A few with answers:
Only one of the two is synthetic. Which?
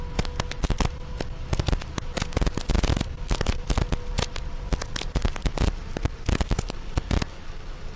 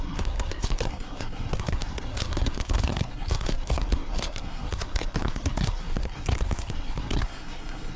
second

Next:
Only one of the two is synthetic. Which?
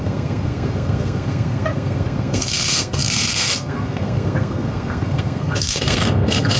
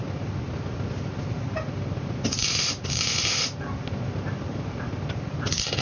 first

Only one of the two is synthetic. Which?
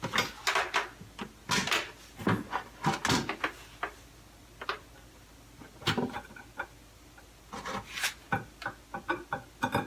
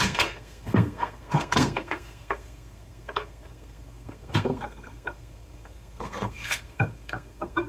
second